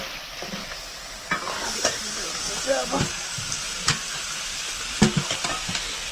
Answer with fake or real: real